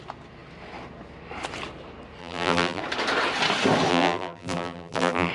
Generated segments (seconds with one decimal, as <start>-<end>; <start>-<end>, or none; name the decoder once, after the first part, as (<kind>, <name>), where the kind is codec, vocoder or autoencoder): 2.2-2.8 (vocoder, BigVGAN v2); 3.9-5.3